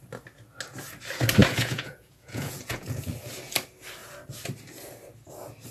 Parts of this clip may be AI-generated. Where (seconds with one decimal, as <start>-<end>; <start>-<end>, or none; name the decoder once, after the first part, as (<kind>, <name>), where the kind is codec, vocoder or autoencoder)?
1.4-3.1 (vocoder, Vocos)